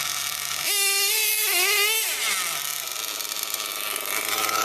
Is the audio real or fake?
real